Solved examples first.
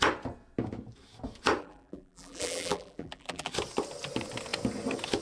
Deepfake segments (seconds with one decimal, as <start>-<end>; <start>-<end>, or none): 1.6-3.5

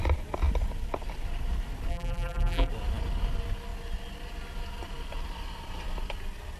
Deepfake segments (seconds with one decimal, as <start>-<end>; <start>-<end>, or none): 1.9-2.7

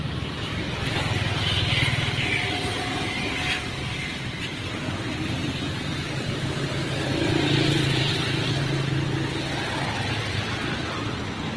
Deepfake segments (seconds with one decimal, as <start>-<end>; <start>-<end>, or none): 5.4-8.5

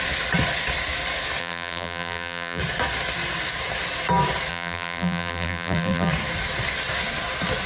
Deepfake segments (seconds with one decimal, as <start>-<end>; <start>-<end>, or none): 1.4-2.6; 4.5-6.1